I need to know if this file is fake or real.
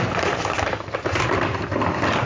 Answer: fake